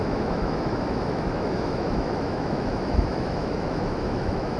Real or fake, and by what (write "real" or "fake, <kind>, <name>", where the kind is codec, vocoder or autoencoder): fake, autoencoder, DAC-VAE